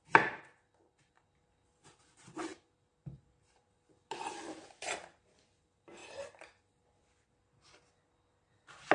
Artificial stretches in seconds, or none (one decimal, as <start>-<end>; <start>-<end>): none